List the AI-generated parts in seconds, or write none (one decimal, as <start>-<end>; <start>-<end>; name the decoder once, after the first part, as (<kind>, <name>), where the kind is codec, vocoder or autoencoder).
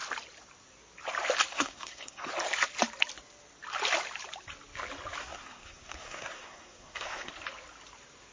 1.5-2.3 (codec, SNAC); 5.2-7.3